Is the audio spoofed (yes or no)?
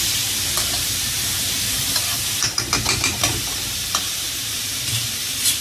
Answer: yes